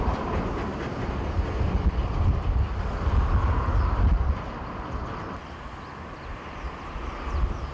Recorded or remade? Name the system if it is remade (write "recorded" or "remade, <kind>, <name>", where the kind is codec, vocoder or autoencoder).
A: recorded